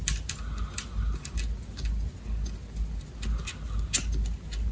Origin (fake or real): real